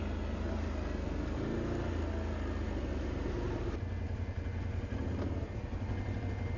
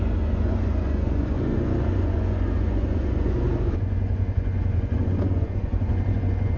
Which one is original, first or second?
first